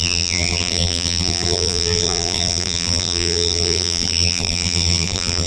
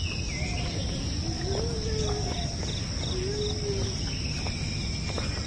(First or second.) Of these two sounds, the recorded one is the second